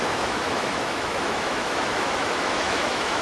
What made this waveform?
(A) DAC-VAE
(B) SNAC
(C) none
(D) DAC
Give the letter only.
A